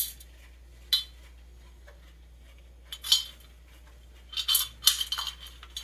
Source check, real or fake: real